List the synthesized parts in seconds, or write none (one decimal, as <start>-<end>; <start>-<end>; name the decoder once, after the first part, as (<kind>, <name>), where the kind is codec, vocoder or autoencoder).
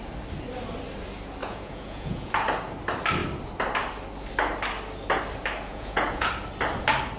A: 1.4-2.3 (vocoder, Vocos); 5.7-6.3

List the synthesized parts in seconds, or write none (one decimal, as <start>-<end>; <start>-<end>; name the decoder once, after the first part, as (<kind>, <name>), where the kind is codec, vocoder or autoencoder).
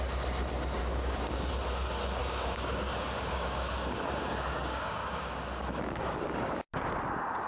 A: 0.8-1.5 (codec, DAC); 2.2-6.7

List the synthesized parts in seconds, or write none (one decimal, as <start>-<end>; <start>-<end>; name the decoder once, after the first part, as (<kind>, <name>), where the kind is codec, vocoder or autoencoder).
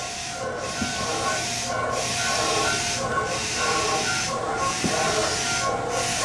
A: 0.0-5.2 (vocoder, BigVGAN v2)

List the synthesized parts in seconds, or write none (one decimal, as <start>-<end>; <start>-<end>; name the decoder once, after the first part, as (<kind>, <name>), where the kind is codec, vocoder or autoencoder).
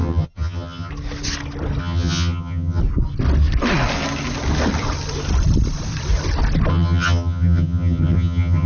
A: 0.0-0.9 (vocoder, HiFi-GAN); 1.8-2.8; 6.7-8.7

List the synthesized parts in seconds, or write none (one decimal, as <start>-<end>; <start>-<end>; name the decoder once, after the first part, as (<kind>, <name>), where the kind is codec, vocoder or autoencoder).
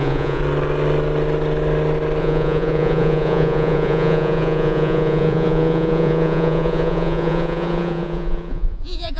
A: 0.0-0.4 (vocoder, Vocos); 2.2-9.2